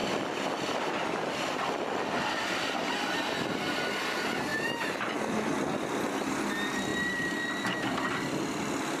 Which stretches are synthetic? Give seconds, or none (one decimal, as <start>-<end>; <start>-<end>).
4.5-5.5; 6.9-9.0